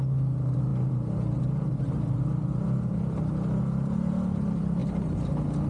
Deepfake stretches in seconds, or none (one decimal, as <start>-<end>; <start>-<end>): none